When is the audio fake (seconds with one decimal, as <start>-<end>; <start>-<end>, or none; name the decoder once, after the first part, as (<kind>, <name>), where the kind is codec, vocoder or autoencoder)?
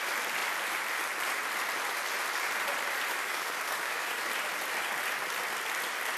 3.1-4.3 (codec, DAC)